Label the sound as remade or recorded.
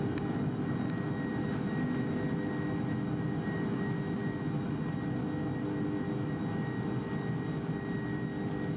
recorded